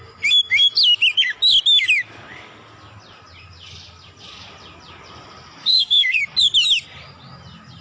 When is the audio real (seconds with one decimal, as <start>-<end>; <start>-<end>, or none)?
0.0-5.6; 6.2-7.8